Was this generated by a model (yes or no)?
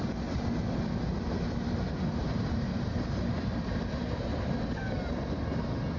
no